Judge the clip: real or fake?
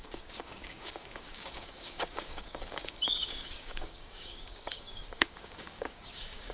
fake